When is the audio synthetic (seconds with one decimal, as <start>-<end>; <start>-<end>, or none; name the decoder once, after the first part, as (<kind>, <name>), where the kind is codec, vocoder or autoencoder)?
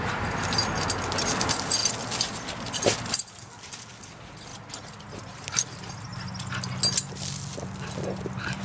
1.8-3.3 (vocoder, BigVGAN v2)